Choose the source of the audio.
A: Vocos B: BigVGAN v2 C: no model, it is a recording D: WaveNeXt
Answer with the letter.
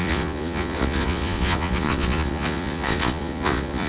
A